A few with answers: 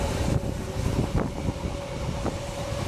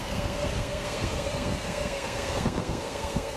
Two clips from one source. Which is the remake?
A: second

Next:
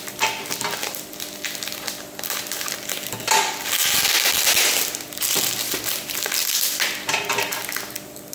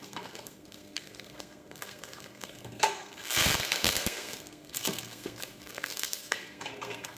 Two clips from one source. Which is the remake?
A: second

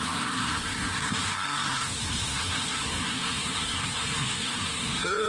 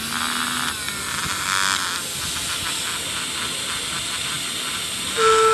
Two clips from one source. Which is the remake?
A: first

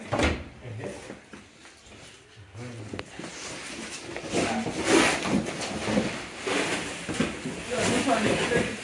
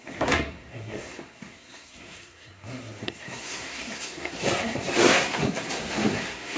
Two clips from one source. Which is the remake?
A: second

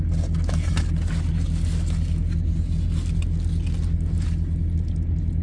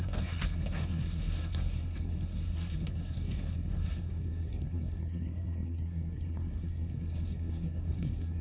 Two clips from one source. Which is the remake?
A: second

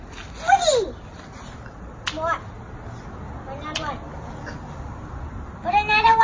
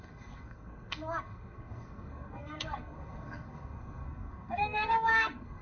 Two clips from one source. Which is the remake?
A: second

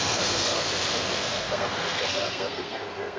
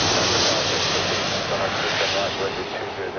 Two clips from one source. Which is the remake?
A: first